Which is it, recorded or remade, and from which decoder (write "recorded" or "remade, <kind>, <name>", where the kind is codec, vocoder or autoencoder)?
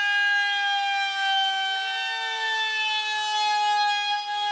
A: recorded